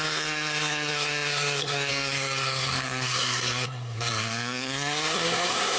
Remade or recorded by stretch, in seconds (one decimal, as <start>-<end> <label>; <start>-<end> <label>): 0.0-5.8 remade

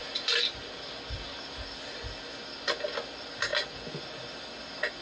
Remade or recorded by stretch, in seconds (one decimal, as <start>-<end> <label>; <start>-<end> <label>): 0.0-5.0 recorded

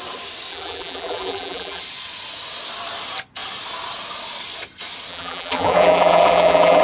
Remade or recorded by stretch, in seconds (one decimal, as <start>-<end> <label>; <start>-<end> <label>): 0.0-0.5 recorded; 0.5-1.8 remade; 1.8-5.1 recorded; 5.1-6.8 remade

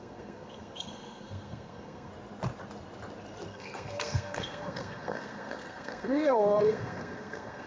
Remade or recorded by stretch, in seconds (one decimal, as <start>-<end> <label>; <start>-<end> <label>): 0.0-2.1 remade; 2.1-3.5 recorded; 3.5-7.7 remade